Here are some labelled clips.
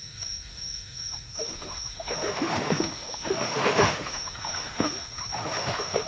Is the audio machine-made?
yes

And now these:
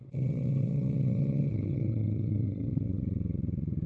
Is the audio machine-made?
yes